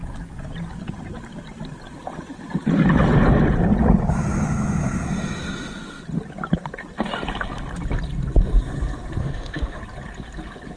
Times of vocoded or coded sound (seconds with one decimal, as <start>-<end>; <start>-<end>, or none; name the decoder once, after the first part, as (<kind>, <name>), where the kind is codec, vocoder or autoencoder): 9.2-9.8 (autoencoder, DAC-VAE)

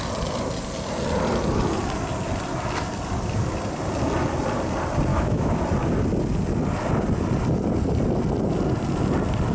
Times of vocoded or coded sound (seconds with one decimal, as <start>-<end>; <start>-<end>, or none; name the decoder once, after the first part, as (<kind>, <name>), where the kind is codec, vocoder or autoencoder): 5.1-5.6 (autoencoder, DAC-VAE)

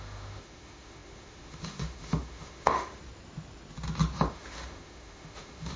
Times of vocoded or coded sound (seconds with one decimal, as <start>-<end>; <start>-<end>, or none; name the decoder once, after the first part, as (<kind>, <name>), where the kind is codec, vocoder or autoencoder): 0.0-3.0 (autoencoder, DAC-VAE); 4.3-5.8

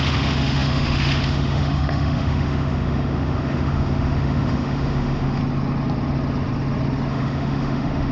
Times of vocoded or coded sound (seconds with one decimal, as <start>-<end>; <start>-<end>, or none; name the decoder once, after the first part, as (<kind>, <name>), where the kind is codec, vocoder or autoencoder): 0.0-5.4 (autoencoder, DAC-VAE); 7.1-8.1

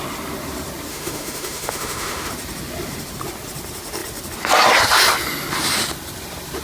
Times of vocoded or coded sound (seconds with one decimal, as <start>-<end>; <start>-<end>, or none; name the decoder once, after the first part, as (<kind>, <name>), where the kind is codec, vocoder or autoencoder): 0.9-2.3 (autoencoder, DAC-VAE)

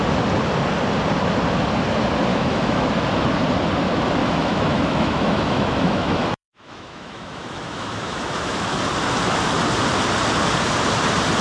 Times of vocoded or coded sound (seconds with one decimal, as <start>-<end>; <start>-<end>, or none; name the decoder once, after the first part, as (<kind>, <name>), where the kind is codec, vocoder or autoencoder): 2.3-2.8 (autoencoder, DAC-VAE); 4.2-8.8

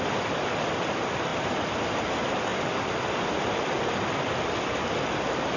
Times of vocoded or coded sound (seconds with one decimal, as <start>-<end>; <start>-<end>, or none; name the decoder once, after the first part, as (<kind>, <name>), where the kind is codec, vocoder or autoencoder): none

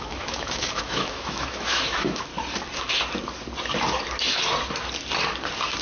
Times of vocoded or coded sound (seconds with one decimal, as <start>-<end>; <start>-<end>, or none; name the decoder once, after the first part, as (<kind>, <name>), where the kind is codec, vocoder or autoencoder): 0.0-2.3 (autoencoder, DAC-VAE)